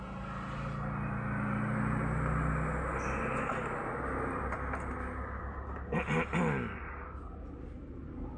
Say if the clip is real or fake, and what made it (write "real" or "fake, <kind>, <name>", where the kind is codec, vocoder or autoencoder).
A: real